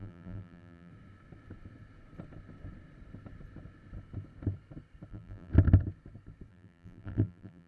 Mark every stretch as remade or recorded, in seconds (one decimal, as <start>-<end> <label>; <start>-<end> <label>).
0.0-0.9 remade; 0.9-5.1 recorded; 5.1-5.5 remade; 5.5-6.5 recorded; 6.5-7.7 remade